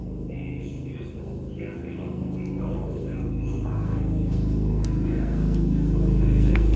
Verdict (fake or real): fake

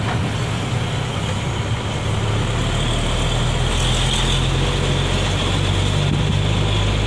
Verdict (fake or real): real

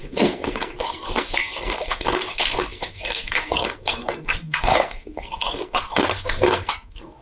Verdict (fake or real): fake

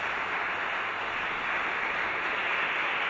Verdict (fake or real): real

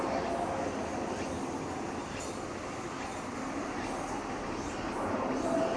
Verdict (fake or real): real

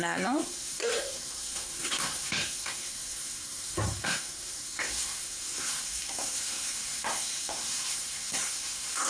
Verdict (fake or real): fake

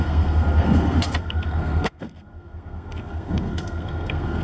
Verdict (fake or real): fake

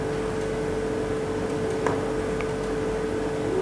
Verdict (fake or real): real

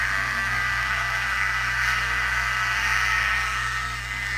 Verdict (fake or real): fake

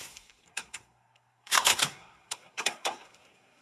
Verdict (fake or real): fake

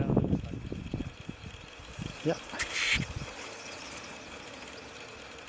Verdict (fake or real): real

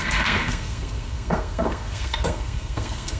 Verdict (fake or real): fake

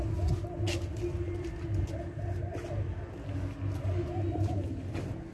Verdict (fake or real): real